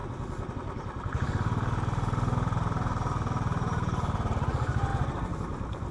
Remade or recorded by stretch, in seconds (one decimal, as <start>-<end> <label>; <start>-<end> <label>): 0.0-0.5 recorded; 0.5-4.9 remade; 4.9-5.9 recorded